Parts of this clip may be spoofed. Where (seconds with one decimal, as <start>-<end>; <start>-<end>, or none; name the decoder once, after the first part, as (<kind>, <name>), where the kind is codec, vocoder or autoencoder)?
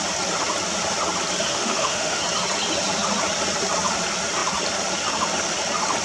1.5-2.2 (autoencoder, DAC-VAE)